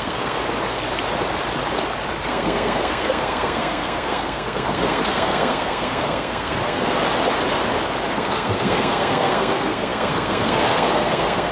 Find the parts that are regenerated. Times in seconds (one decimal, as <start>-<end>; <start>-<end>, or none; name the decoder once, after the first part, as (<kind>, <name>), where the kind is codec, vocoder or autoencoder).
0.0-0.4 (codec, SNAC); 2.3-7.0; 8.1-11.5